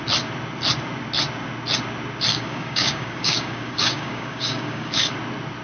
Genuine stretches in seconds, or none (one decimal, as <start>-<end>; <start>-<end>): 0.0-2.3; 5.1-5.6